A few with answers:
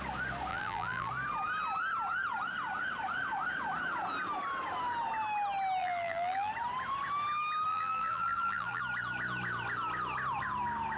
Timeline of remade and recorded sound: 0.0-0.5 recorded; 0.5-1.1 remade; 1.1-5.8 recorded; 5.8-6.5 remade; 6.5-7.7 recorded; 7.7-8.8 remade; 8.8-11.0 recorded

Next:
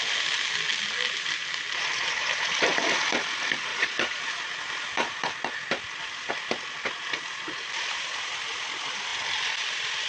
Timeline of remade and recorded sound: 0.0-3.7 recorded; 3.7-4.2 remade; 4.2-10.1 recorded

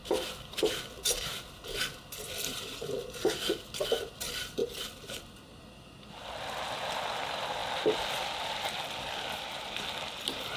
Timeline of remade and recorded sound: 0.0-10.6 recorded

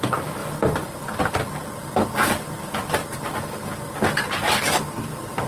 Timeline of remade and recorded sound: 0.0-5.5 recorded

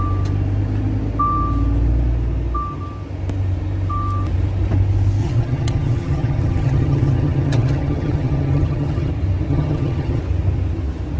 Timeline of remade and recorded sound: 0.0-5.2 recorded; 5.2-9.1 remade; 9.1-9.5 recorded; 9.5-10.2 remade; 10.2-11.2 recorded

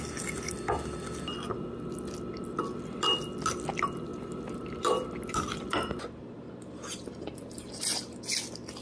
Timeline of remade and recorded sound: 0.0-4.1 recorded; 4.1-8.2 remade; 8.2-8.8 recorded

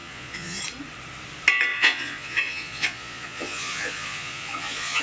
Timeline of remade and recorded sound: 0.0-0.6 remade; 0.6-1.7 recorded; 1.7-5.0 remade